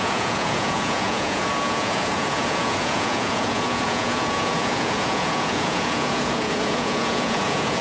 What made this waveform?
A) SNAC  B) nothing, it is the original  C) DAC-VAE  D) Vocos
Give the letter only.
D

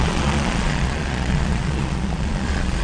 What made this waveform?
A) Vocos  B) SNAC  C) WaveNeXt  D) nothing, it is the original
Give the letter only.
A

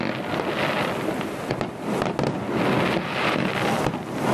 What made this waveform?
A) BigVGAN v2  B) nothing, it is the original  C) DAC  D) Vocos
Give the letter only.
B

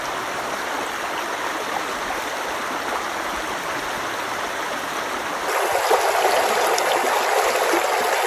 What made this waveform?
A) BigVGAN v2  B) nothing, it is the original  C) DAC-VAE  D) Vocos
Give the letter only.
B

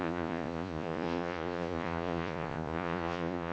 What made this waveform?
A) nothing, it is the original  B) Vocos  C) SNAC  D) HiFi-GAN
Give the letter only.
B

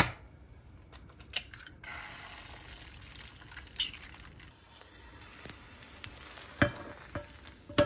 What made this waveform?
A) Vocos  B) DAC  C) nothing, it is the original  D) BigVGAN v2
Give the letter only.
C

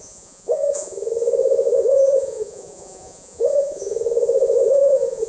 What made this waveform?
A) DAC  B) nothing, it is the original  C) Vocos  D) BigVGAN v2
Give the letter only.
C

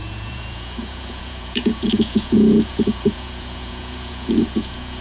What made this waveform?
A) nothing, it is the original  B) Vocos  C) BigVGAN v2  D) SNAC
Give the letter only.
B